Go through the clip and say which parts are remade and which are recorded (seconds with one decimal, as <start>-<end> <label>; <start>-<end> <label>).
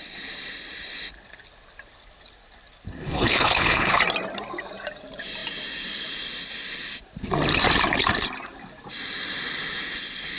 0.0-2.9 recorded; 2.9-4.0 remade; 4.0-10.4 recorded